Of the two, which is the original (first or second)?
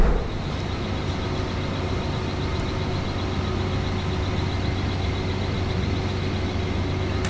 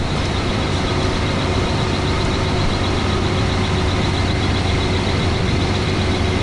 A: first